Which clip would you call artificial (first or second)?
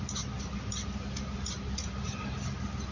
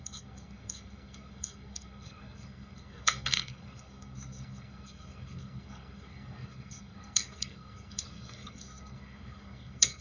second